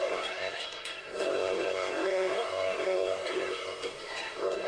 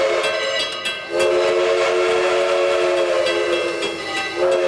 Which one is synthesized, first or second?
first